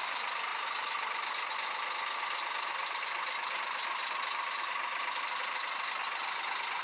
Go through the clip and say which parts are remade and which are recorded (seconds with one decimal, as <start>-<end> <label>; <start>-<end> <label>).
0.0-6.8 recorded